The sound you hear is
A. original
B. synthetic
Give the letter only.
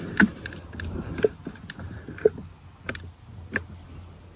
A